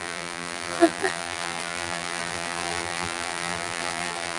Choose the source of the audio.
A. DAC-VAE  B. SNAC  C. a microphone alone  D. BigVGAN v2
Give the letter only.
D